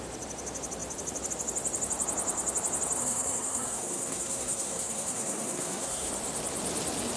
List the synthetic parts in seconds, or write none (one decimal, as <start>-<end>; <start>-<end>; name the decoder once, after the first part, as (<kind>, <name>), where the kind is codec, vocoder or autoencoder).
3.0-6.1 (codec, SNAC)